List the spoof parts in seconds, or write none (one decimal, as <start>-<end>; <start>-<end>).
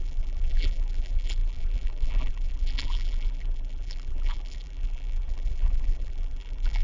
0.0-6.8